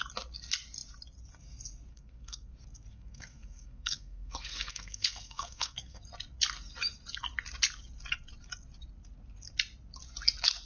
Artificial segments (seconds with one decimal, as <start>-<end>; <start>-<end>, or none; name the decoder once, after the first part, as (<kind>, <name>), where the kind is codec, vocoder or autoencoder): 1.9-2.5 (codec, SNAC); 2.9-6.0